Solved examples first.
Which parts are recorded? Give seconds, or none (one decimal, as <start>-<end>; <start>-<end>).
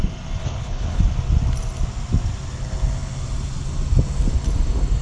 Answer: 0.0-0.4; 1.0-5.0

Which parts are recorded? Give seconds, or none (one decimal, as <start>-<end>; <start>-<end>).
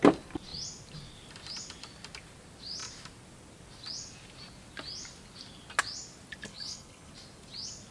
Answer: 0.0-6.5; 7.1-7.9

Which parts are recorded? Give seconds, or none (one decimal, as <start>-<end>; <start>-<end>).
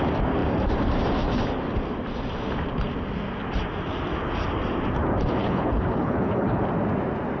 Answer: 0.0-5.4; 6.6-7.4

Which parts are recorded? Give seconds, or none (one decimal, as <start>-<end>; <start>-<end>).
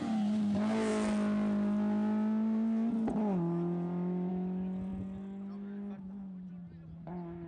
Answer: 0.0-7.5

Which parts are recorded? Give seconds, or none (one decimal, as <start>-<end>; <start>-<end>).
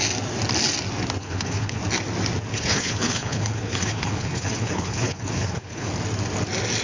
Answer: 0.0-1.2; 1.8-2.5; 5.9-6.8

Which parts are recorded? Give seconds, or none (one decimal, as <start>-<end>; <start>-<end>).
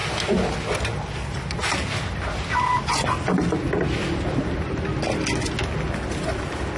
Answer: 0.0-6.8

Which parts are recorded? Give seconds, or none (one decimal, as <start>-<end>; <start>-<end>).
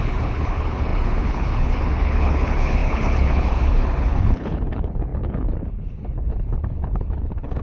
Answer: none